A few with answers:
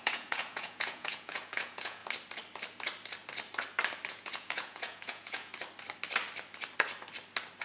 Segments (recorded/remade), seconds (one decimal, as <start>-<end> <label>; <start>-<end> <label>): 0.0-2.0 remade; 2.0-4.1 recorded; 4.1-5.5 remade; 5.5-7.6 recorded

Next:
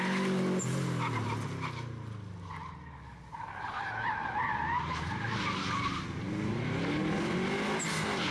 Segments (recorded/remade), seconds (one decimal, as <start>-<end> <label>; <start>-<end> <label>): 0.0-8.3 recorded

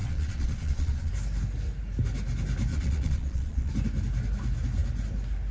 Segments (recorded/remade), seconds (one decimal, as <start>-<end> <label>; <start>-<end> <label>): 0.0-1.1 remade; 1.1-2.7 recorded; 2.7-3.7 remade; 3.7-5.5 recorded

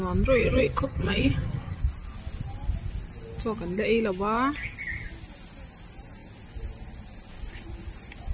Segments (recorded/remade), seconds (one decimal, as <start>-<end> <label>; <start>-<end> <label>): 0.0-0.4 recorded; 0.4-1.8 remade; 1.8-8.3 recorded

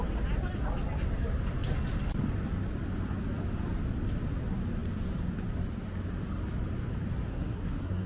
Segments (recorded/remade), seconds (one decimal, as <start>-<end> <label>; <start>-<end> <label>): 0.0-7.3 recorded; 7.3-8.1 remade

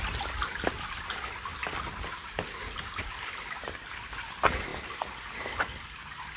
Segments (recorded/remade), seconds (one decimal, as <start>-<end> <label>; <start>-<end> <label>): 0.0-6.4 recorded

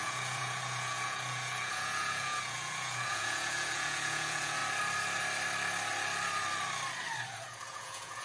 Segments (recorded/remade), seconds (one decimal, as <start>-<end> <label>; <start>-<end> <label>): 0.0-4.6 remade; 4.6-7.3 recorded; 7.3-8.2 remade